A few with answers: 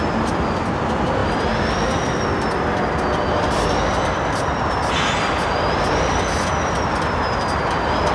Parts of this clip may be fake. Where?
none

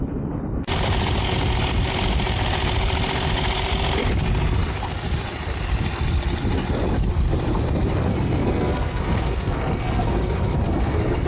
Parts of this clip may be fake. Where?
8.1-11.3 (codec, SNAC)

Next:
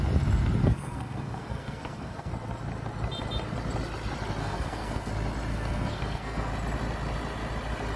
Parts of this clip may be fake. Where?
0.6-2.3 (codec, SNAC); 4.4-5.1; 5.5-6.5